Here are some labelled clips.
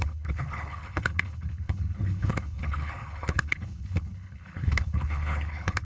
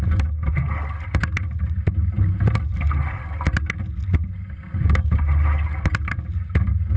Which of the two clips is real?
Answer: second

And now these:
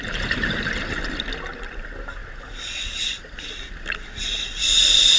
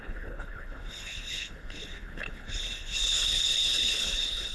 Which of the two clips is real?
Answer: first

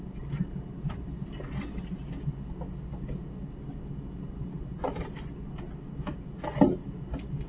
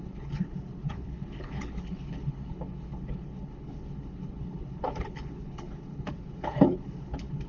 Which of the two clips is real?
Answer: first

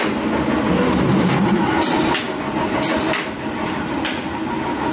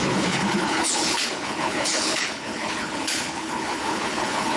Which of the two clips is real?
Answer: first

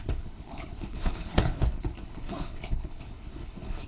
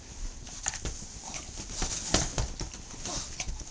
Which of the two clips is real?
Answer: second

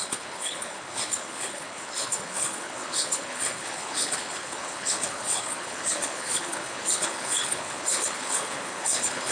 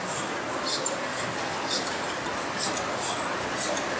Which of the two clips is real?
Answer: second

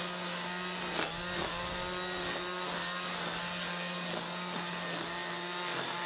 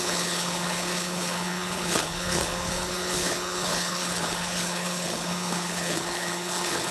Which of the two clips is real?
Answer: first